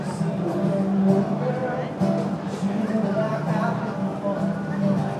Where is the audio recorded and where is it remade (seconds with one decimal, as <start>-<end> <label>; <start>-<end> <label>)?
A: 0.0-0.5 remade; 0.5-1.2 recorded; 1.2-1.6 remade; 1.6-2.7 recorded; 2.7-3.3 remade; 3.3-4.8 recorded; 4.8-5.2 remade